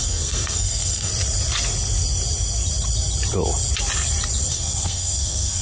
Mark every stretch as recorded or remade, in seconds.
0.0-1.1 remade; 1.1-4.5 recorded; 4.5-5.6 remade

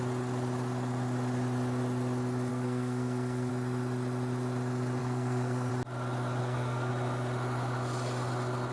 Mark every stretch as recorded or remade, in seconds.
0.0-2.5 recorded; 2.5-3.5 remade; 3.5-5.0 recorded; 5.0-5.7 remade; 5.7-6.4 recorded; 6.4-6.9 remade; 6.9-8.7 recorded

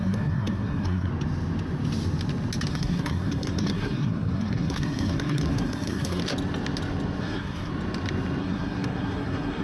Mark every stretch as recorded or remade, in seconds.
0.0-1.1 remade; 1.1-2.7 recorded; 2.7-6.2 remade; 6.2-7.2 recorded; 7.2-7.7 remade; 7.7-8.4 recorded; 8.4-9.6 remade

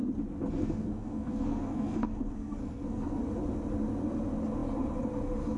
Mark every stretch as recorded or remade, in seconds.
0.0-0.6 recorded; 0.6-3.2 remade; 3.2-5.6 recorded

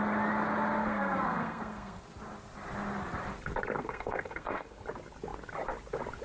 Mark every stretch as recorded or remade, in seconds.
0.0-0.8 recorded; 0.8-2.0 remade; 2.0-3.8 recorded; 3.8-4.8 remade; 4.8-6.2 recorded

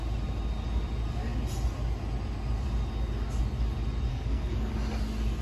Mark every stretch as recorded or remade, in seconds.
0.0-4.1 recorded; 4.1-4.7 remade; 4.7-5.4 recorded

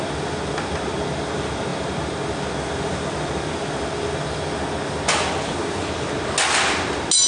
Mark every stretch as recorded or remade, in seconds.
0.0-7.3 recorded